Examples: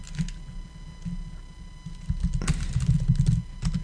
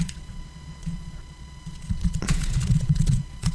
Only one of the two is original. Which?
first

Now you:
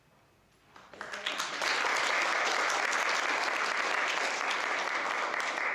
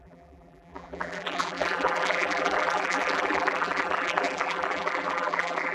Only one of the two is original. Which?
first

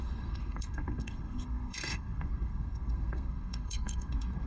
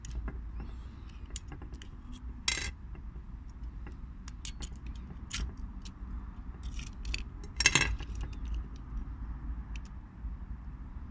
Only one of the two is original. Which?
second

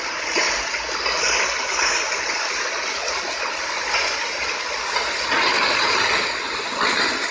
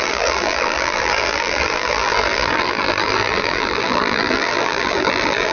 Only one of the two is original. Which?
first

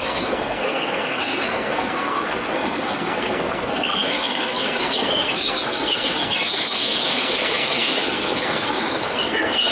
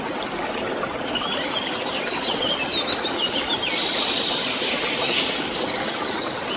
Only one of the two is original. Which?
second